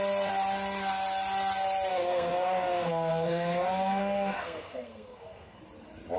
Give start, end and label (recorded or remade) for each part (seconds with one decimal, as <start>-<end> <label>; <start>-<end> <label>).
0.0-1.9 recorded; 1.9-5.6 remade; 5.6-6.2 recorded